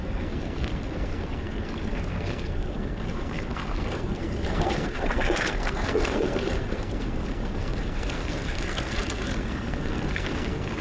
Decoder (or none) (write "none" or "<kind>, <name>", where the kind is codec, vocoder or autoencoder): codec, SNAC